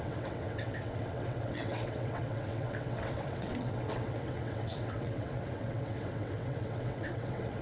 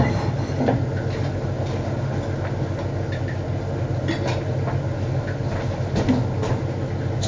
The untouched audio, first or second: second